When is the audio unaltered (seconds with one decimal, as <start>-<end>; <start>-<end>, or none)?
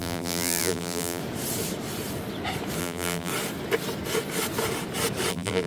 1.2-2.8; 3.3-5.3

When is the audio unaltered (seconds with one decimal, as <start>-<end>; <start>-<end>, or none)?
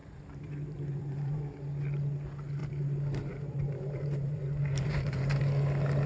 1.4-2.6; 5.4-6.1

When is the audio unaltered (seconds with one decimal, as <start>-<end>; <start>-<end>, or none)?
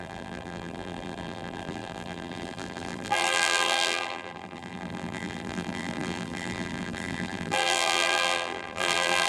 none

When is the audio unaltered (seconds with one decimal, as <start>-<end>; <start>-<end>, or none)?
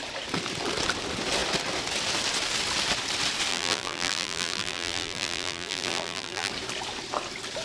0.0-3.5; 6.5-7.6